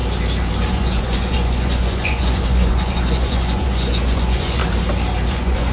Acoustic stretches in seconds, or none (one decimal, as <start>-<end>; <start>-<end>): 0.0-0.7; 4.6-5.3